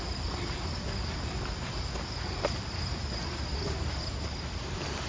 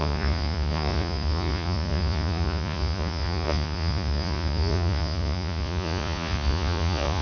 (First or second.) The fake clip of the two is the second